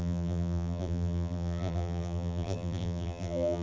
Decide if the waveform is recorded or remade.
remade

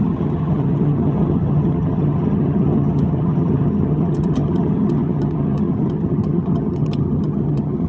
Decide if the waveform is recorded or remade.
remade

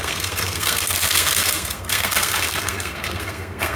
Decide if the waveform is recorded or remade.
remade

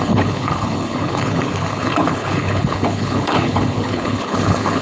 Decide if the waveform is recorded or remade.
remade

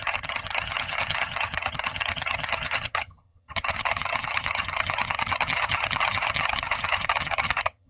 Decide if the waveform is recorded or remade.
remade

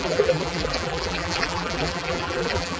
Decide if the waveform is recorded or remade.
remade